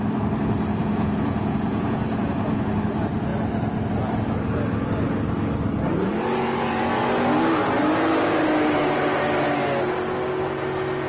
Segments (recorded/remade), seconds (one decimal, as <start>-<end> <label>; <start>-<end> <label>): 0.0-0.8 recorded; 0.8-2.8 remade; 2.8-11.1 recorded

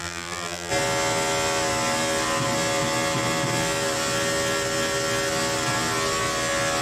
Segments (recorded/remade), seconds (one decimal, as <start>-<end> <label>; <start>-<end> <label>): 0.0-0.7 remade; 0.7-6.8 recorded

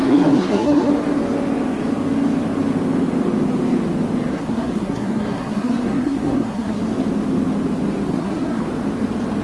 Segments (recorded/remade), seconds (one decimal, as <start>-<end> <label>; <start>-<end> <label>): 0.0-0.9 remade; 0.9-4.3 recorded; 4.3-6.8 remade; 6.8-8.1 recorded; 8.1-8.6 remade; 8.6-9.4 recorded

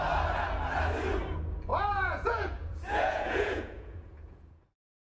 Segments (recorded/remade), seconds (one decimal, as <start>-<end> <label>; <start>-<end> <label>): 0.0-1.7 recorded; 1.7-5.0 remade

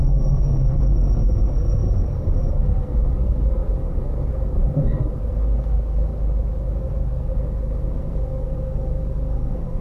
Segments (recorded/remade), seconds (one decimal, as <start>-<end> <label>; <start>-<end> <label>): 0.0-6.1 remade; 6.1-6.6 recorded; 6.6-9.8 remade

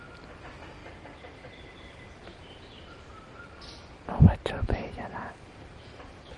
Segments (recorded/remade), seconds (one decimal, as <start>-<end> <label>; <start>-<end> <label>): 0.0-4.4 recorded; 4.4-6.4 remade

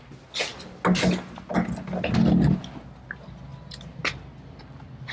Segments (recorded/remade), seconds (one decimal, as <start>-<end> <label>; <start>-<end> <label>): 0.0-5.1 recorded

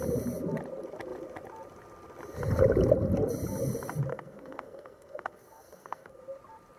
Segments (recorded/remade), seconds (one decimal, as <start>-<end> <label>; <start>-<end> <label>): 0.0-4.1 recorded; 4.1-6.2 remade; 6.2-6.8 recorded